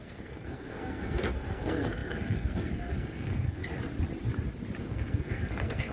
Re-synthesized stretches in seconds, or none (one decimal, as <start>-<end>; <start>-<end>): 0.0-3.6; 4.8-5.9